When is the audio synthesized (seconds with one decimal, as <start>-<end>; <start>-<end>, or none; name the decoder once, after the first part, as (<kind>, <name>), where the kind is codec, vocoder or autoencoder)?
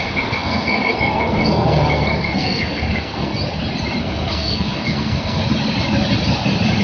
0.0-3.3 (codec, SNAC); 4.0-5.4